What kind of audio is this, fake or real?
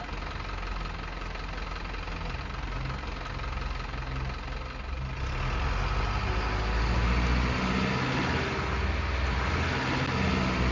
real